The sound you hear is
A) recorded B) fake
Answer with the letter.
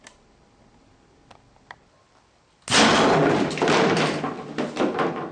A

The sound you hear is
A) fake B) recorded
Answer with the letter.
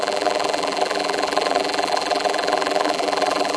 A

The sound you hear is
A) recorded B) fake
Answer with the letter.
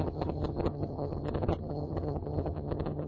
B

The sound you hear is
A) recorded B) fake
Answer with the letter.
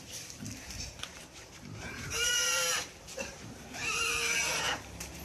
B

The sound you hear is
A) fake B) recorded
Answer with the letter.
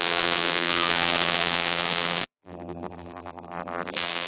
A